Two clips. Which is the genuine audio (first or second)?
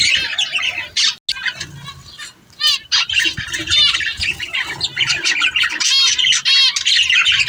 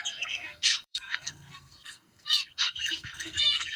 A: first